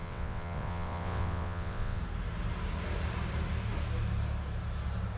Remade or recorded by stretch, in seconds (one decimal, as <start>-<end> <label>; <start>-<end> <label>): 0.0-2.0 remade; 2.0-5.2 recorded